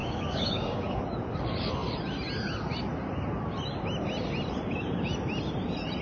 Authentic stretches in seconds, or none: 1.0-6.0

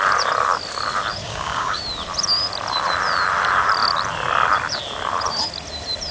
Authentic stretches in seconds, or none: 0.0-1.2; 1.8-6.1